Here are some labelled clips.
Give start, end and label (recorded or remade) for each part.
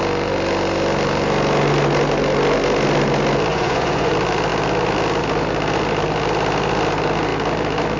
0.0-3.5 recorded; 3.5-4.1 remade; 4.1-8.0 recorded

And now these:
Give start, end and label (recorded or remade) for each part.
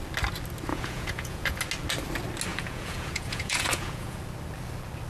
0.0-0.7 recorded; 0.7-1.6 remade; 1.6-2.5 recorded; 2.5-4.2 remade; 4.2-5.1 recorded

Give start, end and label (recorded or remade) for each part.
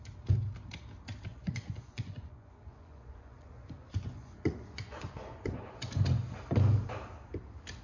0.0-1.3 recorded; 1.3-5.9 remade; 5.9-7.8 recorded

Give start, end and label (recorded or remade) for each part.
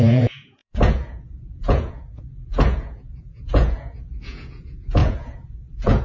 0.0-6.0 remade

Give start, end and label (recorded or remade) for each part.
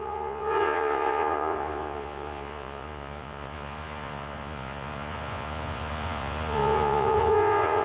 0.0-7.8 remade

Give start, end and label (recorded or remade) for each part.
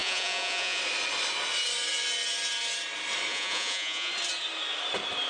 0.0-0.8 remade; 0.8-3.3 recorded; 3.3-4.1 remade; 4.1-5.3 recorded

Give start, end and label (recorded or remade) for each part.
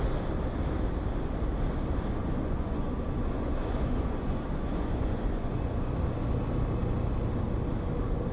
0.0-2.2 recorded; 2.2-5.9 remade; 5.9-8.3 recorded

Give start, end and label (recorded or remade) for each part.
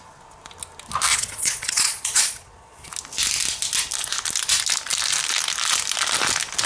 0.0-1.1 recorded; 1.1-2.9 remade; 2.9-6.7 recorded